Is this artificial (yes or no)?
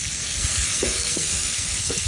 yes